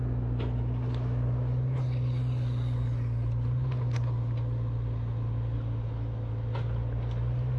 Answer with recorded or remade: recorded